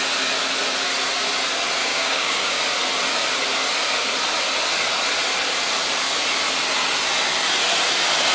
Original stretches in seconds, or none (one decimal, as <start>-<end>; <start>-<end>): 0.0-1.8; 2.6-8.3